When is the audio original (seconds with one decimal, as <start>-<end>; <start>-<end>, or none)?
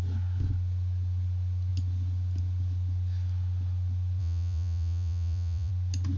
0.0-4.2; 5.7-6.2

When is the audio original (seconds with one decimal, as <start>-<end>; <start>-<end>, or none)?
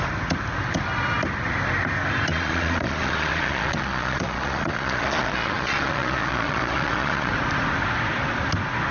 0.0-2.3; 7.3-8.9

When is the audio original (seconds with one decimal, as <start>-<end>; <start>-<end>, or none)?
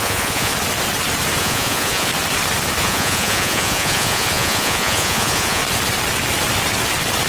0.5-1.4; 2.1-2.8; 5.6-7.3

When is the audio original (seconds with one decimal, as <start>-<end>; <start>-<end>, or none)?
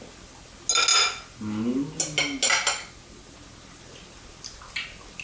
0.0-5.2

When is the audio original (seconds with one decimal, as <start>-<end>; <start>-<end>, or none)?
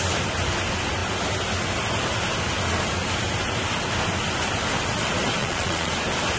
0.0-5.4; 5.9-6.4